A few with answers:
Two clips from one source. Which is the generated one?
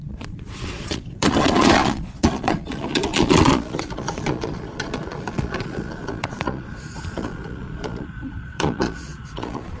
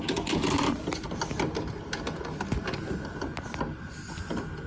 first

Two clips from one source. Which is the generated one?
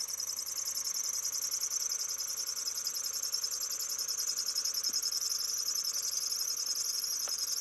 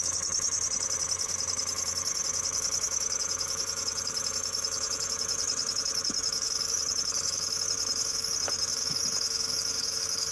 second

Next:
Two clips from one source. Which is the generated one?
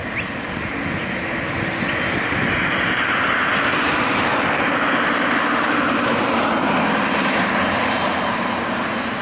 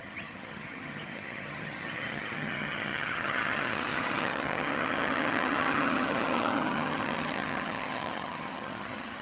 second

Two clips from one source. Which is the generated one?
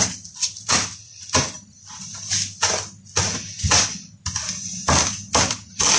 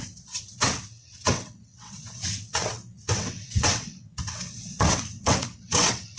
second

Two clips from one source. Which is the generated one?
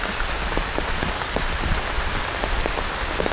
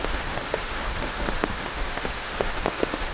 second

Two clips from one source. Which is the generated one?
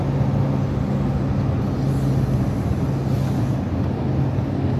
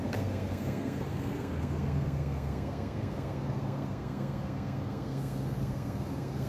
second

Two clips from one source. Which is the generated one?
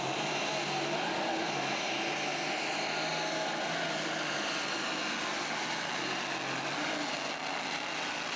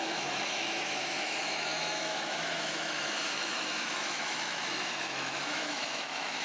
second